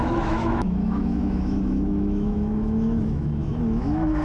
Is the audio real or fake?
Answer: fake